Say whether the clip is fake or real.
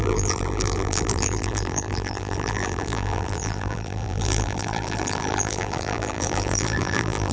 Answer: fake